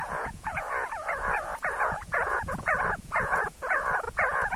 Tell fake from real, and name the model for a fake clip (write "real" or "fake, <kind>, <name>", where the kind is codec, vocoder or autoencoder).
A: fake, vocoder, Vocos